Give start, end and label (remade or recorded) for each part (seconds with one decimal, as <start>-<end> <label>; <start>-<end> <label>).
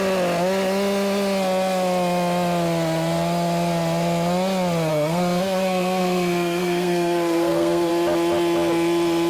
0.0-4.9 recorded; 4.9-7.9 remade; 7.9-9.3 recorded